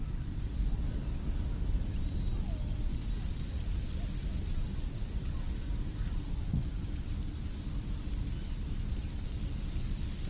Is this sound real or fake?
real